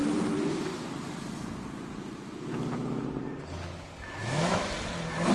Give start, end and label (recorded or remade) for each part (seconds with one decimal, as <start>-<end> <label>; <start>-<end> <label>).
0.0-4.2 recorded; 4.2-4.7 remade; 4.7-5.3 recorded